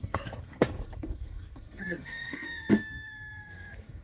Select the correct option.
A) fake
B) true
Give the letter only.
A